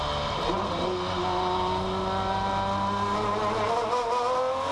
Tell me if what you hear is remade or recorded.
recorded